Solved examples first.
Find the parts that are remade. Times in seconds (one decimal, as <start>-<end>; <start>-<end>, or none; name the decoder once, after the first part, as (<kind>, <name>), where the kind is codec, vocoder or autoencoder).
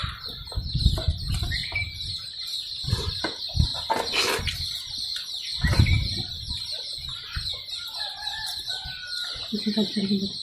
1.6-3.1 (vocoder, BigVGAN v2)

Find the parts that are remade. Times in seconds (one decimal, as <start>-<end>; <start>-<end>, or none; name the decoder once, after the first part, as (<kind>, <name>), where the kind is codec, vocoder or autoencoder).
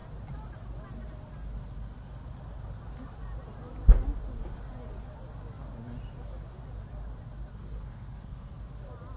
7.5-8.5 (codec, SNAC)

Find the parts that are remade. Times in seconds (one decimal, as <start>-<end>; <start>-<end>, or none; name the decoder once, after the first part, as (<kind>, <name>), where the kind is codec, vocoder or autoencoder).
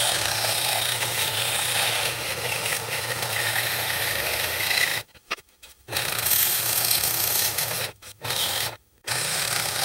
0.0-9.8 (autoencoder, DAC-VAE)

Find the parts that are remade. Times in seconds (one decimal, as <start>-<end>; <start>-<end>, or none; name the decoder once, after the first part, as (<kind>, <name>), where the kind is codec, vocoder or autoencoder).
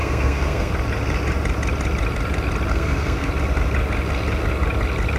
0.0-0.7 (codec, SNAC); 2.7-3.3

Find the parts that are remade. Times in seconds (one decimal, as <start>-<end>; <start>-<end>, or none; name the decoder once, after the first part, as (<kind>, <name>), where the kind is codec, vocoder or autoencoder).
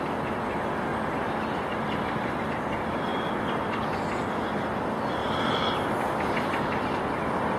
0.9-2.6 (vocoder, BigVGAN v2); 5.2-6.6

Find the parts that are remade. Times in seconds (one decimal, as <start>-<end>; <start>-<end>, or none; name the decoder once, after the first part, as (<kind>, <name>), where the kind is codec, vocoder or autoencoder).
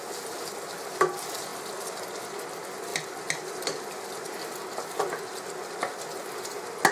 none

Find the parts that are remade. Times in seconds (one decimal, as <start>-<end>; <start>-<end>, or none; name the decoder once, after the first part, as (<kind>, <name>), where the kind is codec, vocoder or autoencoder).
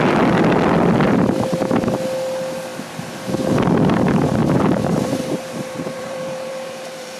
4.4-7.2 (vocoder, BigVGAN v2)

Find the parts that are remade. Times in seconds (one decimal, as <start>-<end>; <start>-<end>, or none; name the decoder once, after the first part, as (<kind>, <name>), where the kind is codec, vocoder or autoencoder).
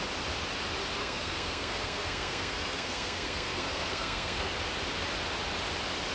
1.0-4.5 (codec, SNAC)